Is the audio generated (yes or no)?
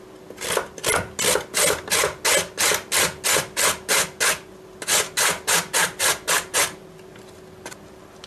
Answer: no